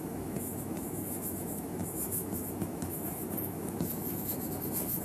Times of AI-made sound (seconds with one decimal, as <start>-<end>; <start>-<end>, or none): 0.0-5.0